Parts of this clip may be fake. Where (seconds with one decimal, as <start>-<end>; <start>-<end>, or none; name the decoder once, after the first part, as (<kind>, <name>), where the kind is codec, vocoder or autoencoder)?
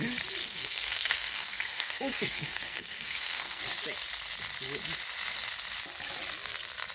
0.4-3.6 (codec, SNAC)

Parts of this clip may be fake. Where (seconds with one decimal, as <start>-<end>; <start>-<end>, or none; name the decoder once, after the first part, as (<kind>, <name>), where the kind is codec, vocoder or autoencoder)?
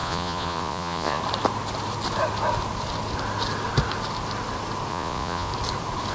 0.0-1.2 (vocoder, Vocos); 4.9-5.5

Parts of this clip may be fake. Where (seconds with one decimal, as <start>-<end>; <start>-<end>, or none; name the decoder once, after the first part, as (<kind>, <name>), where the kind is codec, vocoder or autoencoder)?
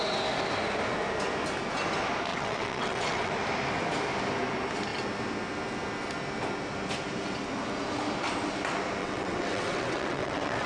2.3-3.3 (vocoder, WaveNeXt); 9.0-10.7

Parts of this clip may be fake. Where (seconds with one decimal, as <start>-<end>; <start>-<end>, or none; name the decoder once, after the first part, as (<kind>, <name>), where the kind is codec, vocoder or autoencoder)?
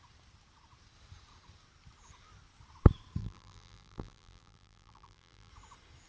3.2-5.5 (vocoder, BigVGAN v2)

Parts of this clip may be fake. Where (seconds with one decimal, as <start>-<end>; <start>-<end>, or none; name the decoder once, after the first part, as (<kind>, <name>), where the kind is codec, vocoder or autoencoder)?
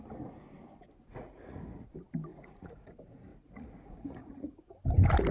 1.1-1.9 (vocoder, Vocos); 2.3-2.9; 3.3-4.7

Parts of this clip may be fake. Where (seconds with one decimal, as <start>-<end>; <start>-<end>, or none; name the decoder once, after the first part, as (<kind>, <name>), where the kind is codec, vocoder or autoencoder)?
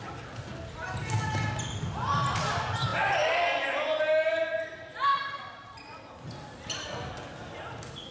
5.1-6.1 (vocoder, BigVGAN v2)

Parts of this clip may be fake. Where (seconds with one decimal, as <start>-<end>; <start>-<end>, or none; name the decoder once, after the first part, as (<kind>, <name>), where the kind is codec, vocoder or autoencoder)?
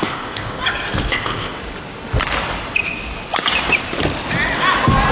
0.0-0.6 (codec, ZipCodec); 1.1-1.6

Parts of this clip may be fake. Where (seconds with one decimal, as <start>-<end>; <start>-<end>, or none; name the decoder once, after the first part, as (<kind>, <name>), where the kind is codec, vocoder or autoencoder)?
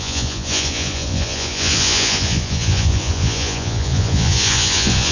0.0-5.1 (vocoder, Vocos)